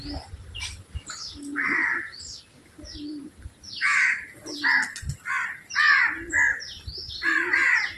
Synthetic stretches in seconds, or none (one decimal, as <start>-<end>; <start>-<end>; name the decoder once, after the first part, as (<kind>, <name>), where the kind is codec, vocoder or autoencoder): none